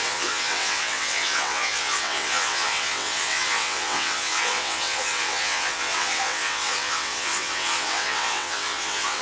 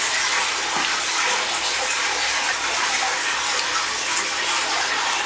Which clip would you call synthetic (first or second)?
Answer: first